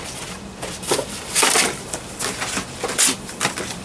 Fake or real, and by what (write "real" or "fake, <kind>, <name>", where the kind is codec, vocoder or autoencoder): real